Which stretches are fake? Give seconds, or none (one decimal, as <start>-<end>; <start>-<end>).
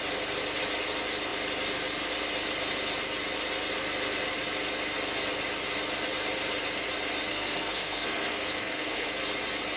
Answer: 7.3-9.1